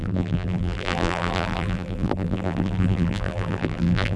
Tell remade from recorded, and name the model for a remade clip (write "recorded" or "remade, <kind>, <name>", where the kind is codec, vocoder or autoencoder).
remade, vocoder, BigVGAN v2